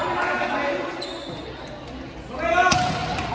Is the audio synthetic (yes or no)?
no